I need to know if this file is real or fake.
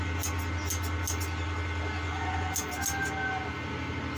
real